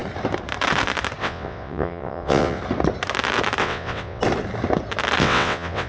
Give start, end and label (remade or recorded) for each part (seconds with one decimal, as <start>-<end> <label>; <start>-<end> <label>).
0.0-1.2 recorded; 1.2-2.6 remade; 2.6-3.6 recorded; 3.6-4.2 remade; 4.2-5.2 recorded; 5.2-5.9 remade